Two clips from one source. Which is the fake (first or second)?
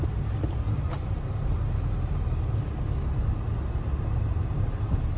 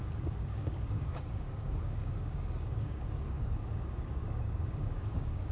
second